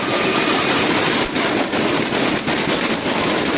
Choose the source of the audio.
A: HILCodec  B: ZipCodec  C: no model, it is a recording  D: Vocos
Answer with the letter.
C